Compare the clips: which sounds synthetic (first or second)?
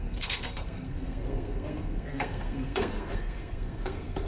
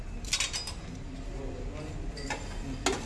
first